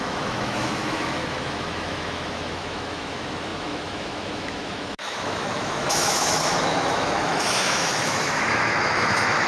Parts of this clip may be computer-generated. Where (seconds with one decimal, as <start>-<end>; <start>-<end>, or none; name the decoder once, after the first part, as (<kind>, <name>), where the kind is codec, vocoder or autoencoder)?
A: 0.0-9.5 (autoencoder, DAC-VAE)